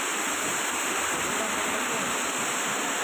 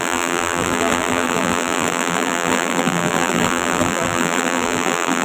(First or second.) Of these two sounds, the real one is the first